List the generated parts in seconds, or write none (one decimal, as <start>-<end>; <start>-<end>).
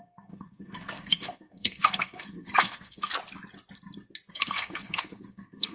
0.0-3.1; 4.3-5.7